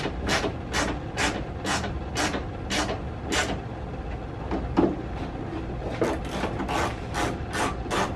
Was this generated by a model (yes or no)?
no